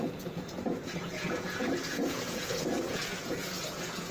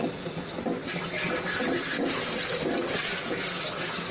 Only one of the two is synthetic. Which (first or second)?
first